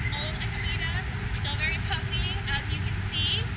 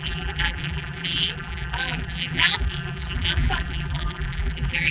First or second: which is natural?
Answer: first